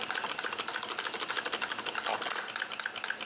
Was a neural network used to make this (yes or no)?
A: no